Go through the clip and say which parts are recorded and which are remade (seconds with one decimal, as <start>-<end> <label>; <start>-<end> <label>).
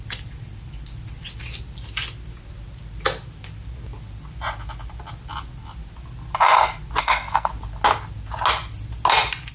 0.0-7.0 recorded; 7.0-7.5 remade; 7.5-9.5 recorded